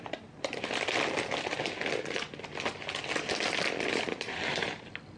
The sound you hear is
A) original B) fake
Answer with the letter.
B